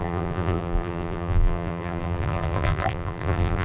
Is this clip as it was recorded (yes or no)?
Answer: no